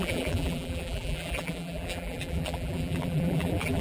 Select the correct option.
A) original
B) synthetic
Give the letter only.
B